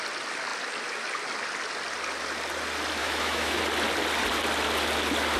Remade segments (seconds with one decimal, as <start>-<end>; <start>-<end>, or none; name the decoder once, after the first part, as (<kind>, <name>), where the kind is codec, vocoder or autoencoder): 3.0-3.6 (autoencoder, DAC-VAE)